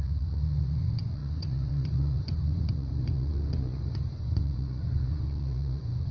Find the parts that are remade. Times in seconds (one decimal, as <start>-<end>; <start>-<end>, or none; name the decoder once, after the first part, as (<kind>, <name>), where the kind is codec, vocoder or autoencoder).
0.0-6.1 (vocoder, Vocos)